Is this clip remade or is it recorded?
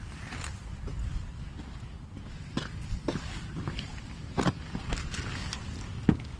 recorded